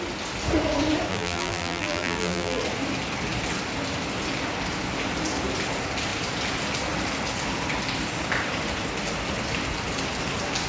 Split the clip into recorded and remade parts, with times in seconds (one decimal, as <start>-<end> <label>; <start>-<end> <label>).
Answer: 0.0-1.1 recorded; 1.1-2.6 remade; 2.6-10.7 recorded